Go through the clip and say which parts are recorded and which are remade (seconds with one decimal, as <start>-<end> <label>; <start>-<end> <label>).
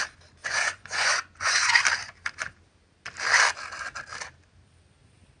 0.0-0.4 recorded; 0.4-1.8 remade; 1.8-5.4 recorded